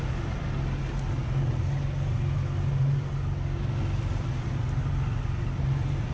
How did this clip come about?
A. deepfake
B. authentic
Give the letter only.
B